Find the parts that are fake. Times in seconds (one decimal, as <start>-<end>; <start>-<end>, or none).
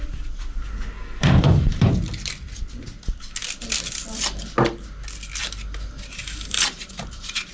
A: 1.2-1.9; 6.2-7.5